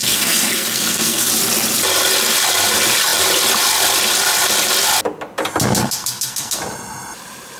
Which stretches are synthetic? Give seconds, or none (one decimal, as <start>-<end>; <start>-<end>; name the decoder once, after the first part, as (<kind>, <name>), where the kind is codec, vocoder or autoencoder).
0.0-1.3 (codec, SNAC); 5.8-6.6